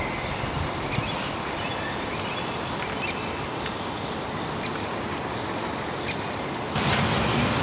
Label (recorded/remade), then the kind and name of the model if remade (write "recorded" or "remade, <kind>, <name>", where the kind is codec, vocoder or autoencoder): recorded